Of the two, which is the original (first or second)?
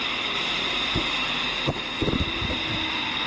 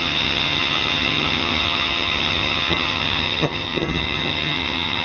first